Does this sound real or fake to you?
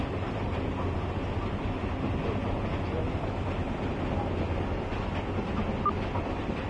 real